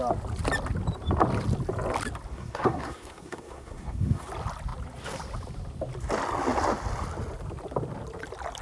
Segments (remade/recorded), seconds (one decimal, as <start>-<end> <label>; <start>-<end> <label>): 0.0-2.3 recorded; 2.3-4.3 remade; 4.3-8.6 recorded